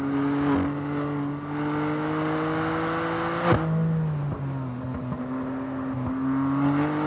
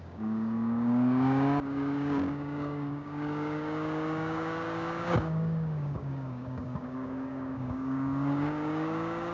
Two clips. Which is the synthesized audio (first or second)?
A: second